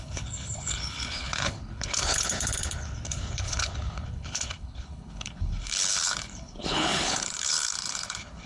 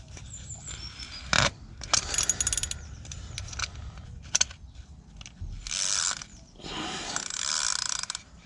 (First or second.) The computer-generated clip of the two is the first